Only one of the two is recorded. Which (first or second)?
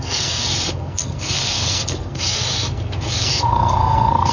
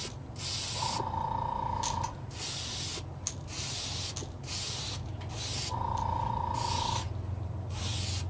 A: second